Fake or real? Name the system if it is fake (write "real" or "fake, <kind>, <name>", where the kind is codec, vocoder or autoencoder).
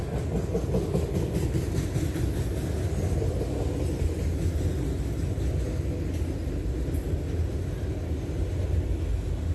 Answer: real